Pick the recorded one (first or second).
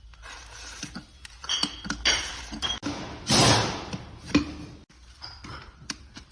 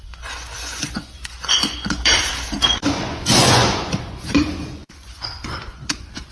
first